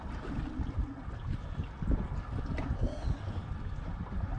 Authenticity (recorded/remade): recorded